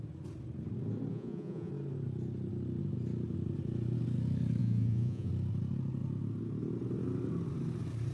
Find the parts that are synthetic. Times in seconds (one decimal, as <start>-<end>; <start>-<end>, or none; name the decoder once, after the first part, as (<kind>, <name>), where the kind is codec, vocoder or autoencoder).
1.1-1.7 (vocoder, Vocos); 4.6-5.3